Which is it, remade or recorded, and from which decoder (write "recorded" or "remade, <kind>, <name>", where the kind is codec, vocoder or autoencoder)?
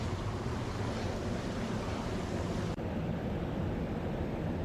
recorded